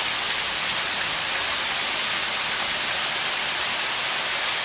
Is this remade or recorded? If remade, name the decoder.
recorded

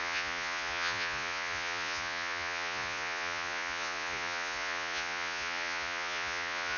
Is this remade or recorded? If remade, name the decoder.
remade, vocoder, Vocos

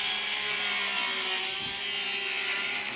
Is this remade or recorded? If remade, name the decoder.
recorded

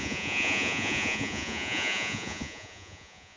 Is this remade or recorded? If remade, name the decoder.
remade, vocoder, Vocos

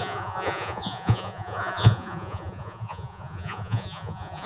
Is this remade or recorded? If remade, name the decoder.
remade, vocoder, Vocos